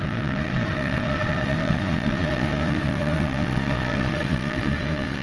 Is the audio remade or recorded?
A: remade